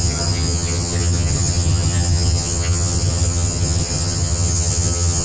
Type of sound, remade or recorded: remade